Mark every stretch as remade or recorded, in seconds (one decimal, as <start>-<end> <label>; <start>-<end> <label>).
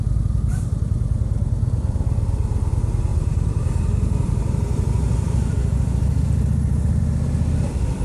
0.0-0.5 recorded; 0.5-2.7 remade; 2.7-3.1 recorded; 3.1-7.0 remade; 7.0-8.0 recorded